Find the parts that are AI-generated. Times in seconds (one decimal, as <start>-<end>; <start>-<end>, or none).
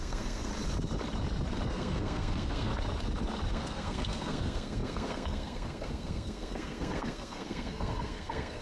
0.0-0.5; 1.7-2.7; 3.5-8.6